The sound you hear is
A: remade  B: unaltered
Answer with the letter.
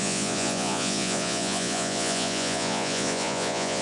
A